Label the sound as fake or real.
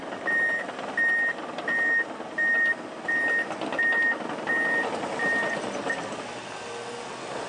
real